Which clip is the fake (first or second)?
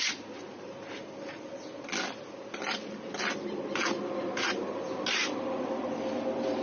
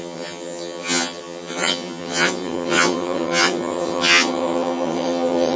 second